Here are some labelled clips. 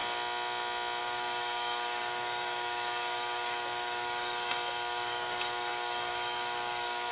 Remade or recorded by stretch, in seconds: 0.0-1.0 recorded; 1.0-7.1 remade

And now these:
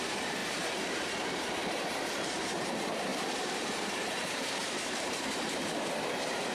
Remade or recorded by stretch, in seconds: 0.0-6.5 remade

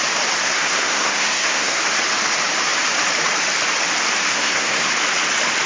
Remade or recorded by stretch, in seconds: 0.0-0.4 recorded; 0.4-1.8 remade; 1.8-4.3 recorded; 4.3-4.9 remade; 4.9-5.7 recorded